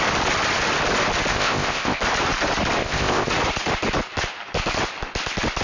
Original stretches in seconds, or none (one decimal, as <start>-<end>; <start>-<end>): 0.0-1.3; 2.0-2.8; 3.3-5.6